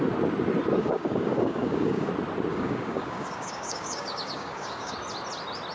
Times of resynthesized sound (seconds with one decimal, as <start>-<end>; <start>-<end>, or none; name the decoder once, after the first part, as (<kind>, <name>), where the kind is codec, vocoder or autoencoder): 0.8-2.1 (codec, DAC); 2.5-4.9